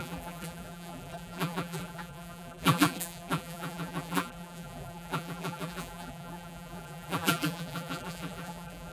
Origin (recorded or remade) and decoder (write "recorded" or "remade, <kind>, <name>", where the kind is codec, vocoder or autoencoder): remade, vocoder, BigVGAN v2